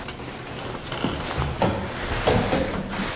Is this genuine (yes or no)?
yes